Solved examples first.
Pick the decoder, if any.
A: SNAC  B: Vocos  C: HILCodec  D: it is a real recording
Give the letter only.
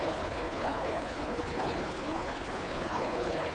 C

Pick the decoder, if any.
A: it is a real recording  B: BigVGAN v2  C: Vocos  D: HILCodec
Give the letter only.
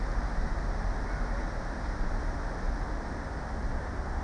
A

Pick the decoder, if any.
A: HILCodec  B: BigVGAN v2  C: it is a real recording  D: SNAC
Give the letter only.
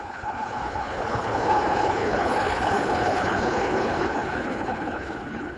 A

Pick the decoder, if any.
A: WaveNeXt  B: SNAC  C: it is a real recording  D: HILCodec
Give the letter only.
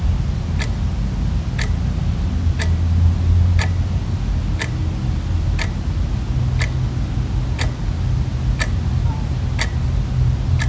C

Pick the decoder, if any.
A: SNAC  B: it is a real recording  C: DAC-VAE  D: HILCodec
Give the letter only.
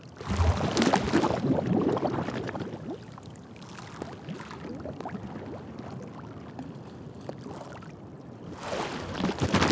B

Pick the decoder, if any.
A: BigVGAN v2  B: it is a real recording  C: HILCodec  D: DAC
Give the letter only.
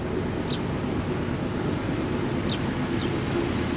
B